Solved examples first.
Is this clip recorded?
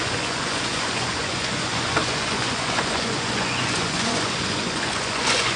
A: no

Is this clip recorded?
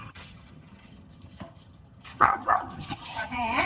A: no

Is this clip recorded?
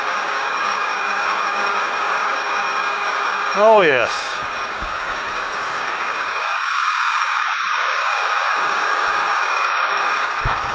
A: no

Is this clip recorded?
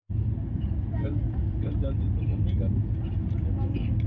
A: yes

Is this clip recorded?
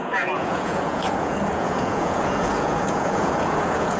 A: no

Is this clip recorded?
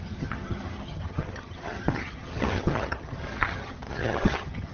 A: no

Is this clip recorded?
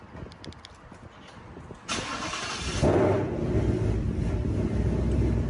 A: yes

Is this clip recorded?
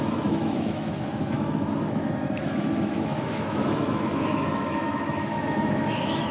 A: no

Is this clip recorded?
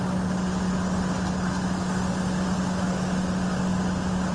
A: yes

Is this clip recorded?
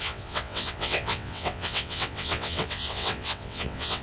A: no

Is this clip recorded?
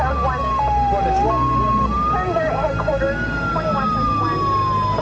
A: yes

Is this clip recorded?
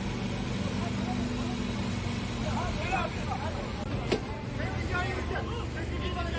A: yes